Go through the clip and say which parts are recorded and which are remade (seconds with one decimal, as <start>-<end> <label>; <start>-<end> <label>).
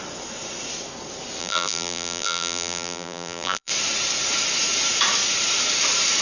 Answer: 0.0-1.4 recorded; 1.4-3.7 remade; 3.7-6.2 recorded